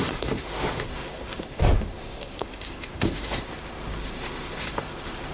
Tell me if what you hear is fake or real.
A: fake